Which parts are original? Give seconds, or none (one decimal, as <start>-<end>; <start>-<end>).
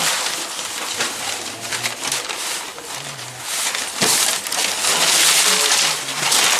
0.0-6.6